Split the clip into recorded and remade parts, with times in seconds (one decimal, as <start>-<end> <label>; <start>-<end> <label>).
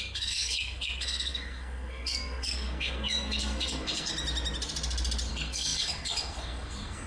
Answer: 0.0-4.1 remade; 4.1-5.3 recorded; 5.3-7.1 remade